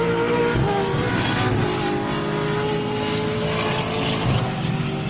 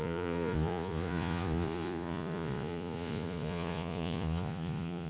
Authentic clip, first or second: first